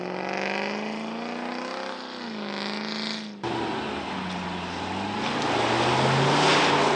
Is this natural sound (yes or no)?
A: yes